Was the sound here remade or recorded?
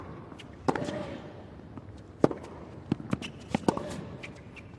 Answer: recorded